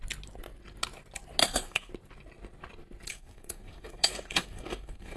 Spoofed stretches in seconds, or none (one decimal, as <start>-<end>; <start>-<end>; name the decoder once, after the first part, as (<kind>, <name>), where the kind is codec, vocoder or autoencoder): 1.4-1.9 (codec, SNAC); 3.1-5.2